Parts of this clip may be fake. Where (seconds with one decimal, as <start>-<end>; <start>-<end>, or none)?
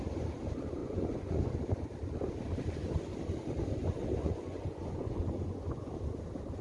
0.8-1.5; 4.2-5.9